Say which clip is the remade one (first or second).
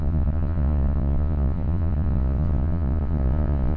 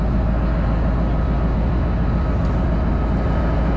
first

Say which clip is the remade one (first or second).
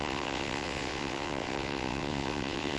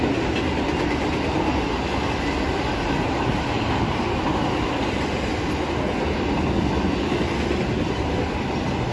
first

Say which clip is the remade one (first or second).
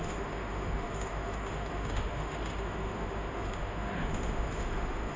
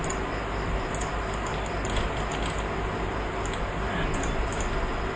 first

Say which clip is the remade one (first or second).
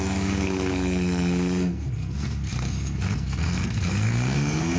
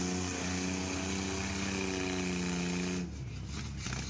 first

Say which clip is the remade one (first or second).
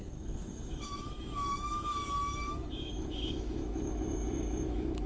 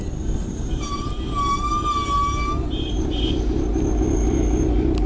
first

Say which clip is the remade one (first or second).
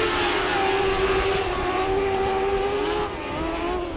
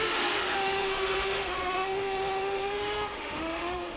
second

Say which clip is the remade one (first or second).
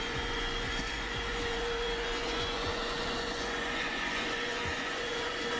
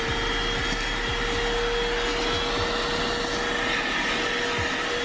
first